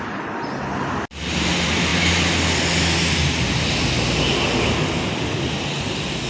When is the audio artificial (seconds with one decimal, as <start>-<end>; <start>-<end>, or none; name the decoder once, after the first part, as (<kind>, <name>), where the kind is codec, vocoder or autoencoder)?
none